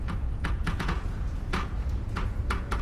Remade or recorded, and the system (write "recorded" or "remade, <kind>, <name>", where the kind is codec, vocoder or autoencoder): remade, vocoder, Vocos